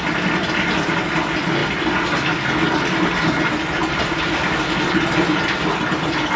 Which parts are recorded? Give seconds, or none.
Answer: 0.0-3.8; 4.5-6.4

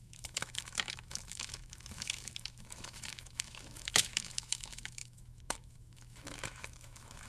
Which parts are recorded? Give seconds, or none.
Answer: none

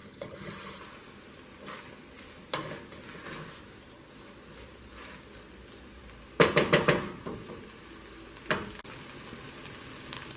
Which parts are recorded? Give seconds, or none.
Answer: 0.8-10.4

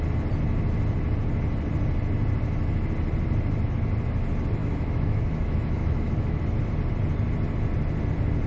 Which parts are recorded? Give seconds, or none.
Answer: 0.0-4.6; 6.4-8.5

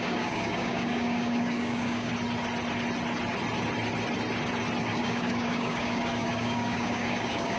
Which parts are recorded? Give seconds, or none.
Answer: 2.1-4.8

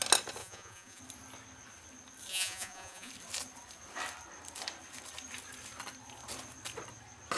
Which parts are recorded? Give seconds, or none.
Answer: 0.0-0.4; 1.0-2.3; 3.1-7.4

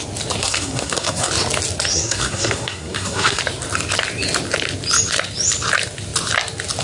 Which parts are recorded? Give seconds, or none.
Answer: 0.0-0.4; 1.3-1.9; 3.4-6.8